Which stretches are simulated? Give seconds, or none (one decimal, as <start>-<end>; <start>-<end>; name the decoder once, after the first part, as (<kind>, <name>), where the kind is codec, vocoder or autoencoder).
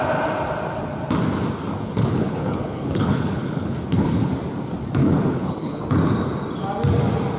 1.7-4.3 (codec, HILCodec); 5.0-5.8